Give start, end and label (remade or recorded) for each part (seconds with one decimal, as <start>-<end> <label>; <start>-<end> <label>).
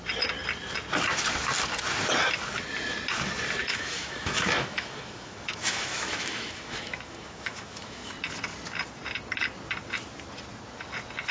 0.0-3.6 recorded; 3.6-8.1 remade; 8.1-11.3 recorded